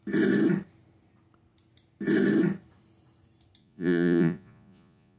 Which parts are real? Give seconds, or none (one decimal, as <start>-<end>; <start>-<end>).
0.0-3.6